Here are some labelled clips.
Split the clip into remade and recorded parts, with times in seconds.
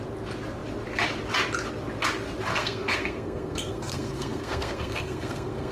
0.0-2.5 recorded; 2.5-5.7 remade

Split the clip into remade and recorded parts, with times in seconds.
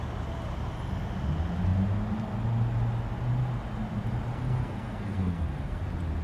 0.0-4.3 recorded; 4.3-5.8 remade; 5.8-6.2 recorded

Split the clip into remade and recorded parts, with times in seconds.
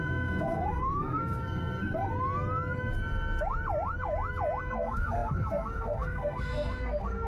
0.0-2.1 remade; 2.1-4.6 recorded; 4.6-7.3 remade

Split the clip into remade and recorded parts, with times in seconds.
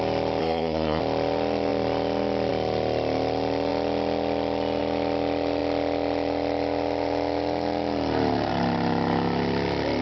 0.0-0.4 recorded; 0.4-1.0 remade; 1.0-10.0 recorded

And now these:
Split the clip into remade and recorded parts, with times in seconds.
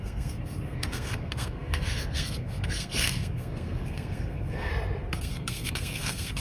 0.0-4.7 remade; 4.7-5.2 recorded; 5.2-6.4 remade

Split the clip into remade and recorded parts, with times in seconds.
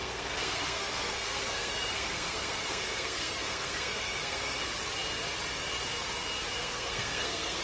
0.0-4.6 remade; 4.6-6.6 recorded; 6.6-7.6 remade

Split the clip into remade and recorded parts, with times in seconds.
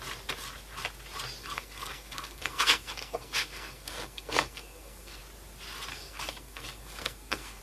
0.0-1.4 recorded; 1.4-5.2 remade; 5.2-5.9 recorded; 5.9-7.6 remade